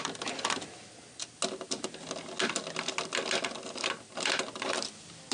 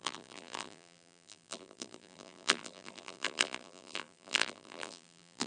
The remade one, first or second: second